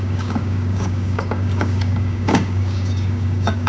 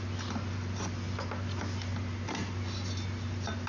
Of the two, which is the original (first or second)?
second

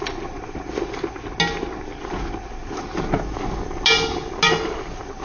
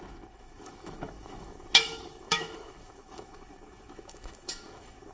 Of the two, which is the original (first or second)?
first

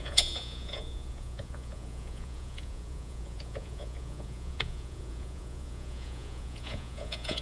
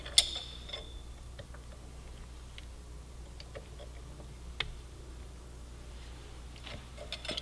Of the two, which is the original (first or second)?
second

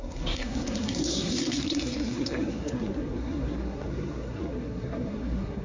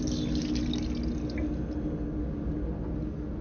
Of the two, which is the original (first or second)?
second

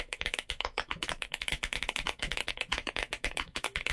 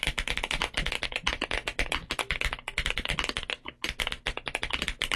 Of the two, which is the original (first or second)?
second